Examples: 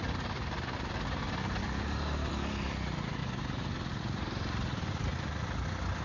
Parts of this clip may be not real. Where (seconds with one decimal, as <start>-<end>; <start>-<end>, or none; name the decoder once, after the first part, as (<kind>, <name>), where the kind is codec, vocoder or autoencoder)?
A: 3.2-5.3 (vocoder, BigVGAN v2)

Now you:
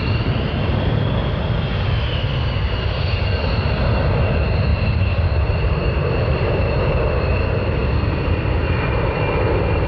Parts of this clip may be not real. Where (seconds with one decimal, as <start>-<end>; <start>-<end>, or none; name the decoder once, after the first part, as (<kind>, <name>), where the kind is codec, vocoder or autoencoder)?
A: 4.7-6.7 (vocoder, BigVGAN v2)

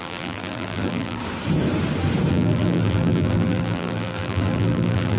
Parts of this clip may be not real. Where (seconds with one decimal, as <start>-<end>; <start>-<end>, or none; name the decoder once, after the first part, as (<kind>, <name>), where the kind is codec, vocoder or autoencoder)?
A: 0.0-1.2 (vocoder, BigVGAN v2); 2.3-5.2